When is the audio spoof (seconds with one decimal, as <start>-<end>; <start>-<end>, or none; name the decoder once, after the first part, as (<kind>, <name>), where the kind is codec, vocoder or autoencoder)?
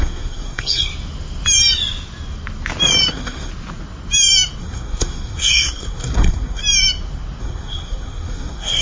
0.0-0.9 (codec, SNAC); 3.1-3.5; 4.6-6.6; 7.4-8.8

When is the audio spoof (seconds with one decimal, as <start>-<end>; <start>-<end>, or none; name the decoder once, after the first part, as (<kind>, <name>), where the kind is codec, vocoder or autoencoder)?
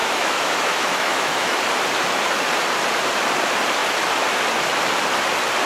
0.0-1.6 (autoencoder, DAC-VAE)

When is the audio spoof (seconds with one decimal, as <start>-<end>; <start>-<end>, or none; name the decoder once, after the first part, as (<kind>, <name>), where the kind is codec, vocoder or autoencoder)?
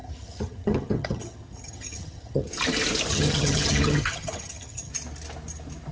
0.0-2.5 (vocoder, HiFi-GAN); 3.1-4.9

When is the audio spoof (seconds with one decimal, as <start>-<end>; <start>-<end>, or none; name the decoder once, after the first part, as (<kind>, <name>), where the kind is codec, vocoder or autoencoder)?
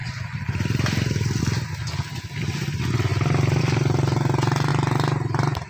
0.0-1.4 (vocoder, BigVGAN v2)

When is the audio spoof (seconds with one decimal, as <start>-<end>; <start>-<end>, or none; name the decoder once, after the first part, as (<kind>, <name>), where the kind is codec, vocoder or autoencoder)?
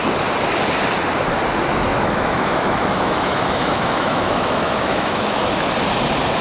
1.9-5.7 (autoencoder, DAC-VAE)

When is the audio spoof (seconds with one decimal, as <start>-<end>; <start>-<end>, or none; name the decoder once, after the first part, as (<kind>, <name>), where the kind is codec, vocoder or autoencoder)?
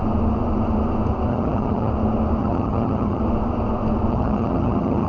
1.3-1.9 (vocoder, HiFi-GAN); 2.4-3.2; 4.1-5.1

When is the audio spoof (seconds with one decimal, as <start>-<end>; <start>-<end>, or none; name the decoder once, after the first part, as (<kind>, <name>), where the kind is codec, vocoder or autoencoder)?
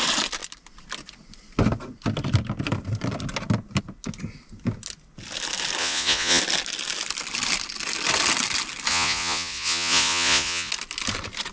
5.8-6.4 (vocoder, Vocos); 8.9-10.7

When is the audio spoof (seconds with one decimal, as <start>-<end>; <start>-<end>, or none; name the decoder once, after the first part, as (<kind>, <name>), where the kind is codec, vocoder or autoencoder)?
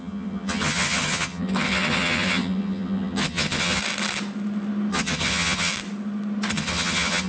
0.0-3.8 (vocoder, HiFi-GAN); 4.9-5.7; 6.5-7.3